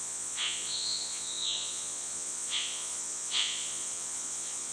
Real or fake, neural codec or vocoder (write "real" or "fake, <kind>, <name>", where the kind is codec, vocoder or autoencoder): fake, vocoder, Vocos